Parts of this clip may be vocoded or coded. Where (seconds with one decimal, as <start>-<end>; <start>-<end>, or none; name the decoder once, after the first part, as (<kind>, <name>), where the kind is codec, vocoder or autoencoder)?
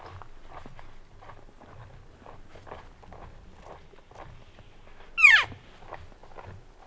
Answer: none